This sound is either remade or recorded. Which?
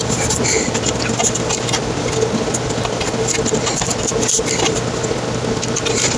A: recorded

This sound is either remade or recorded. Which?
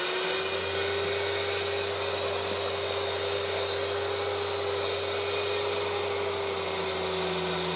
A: recorded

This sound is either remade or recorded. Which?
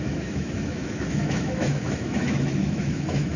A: remade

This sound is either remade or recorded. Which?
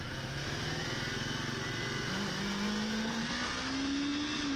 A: recorded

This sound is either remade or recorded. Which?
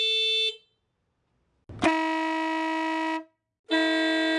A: recorded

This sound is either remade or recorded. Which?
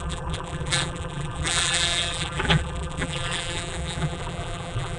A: remade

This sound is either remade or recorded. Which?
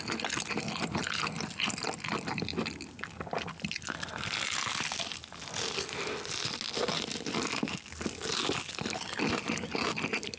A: recorded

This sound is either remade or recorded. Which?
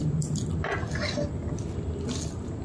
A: recorded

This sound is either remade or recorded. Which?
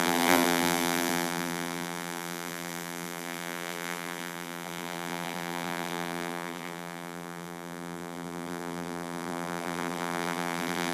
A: remade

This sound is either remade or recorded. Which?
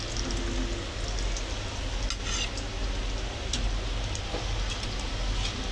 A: recorded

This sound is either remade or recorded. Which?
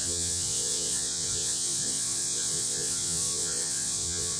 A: remade